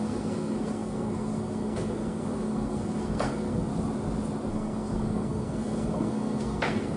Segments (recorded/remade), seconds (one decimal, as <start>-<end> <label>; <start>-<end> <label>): 0.0-3.7 remade; 3.7-4.5 recorded; 4.5-7.0 remade